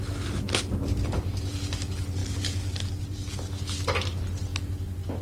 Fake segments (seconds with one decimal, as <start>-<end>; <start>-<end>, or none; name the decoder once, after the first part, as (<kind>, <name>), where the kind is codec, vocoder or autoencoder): 2.2-3.3 (vocoder, BigVGAN v2)